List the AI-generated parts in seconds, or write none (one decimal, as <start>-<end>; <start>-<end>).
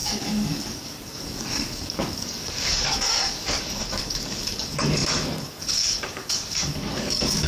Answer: 0.0-7.5